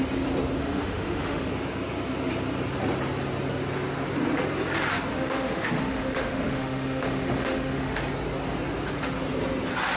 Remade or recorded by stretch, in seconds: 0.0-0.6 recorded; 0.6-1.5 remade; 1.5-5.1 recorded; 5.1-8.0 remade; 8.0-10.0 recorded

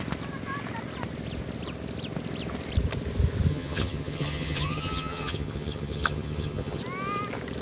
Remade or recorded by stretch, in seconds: 0.0-3.5 recorded; 3.5-6.8 remade; 6.8-7.6 recorded

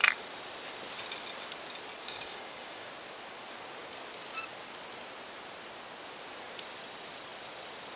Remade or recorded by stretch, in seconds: 0.0-2.0 recorded; 2.0-2.9 remade; 2.9-8.0 recorded